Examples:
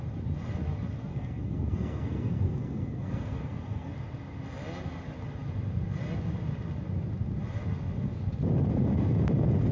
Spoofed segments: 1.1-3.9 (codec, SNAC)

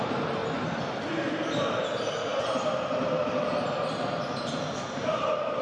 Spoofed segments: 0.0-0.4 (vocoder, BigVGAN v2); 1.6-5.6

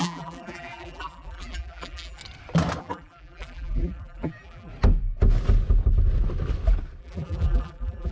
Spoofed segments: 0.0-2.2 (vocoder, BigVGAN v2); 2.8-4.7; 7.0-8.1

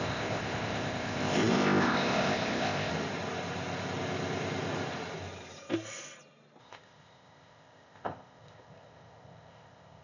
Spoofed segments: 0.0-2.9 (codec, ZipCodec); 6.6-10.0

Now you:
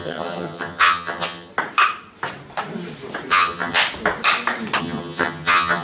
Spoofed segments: 0.0-1.5 (vocoder, HiFi-GAN); 3.3-3.8; 4.8-5.8

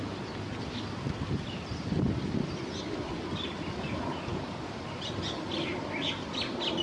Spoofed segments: 0.6-3.1 (vocoder, BigVGAN v2); 4.3-5.2

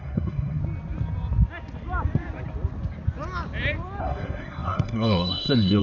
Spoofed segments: 0.0-0.6 (codec, SNAC); 4.0-5.8

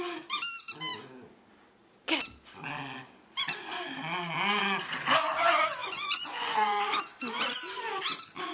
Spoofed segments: 5.8-6.8 (vocoder, Vocos)